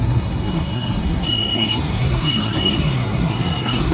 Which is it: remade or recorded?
remade